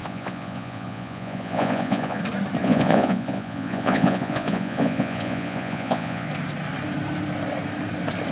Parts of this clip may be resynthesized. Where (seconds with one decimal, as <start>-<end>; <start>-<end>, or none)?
0.0-2.2; 2.6-6.3